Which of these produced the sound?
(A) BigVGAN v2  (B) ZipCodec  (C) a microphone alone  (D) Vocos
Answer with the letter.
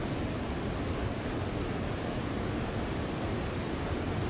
A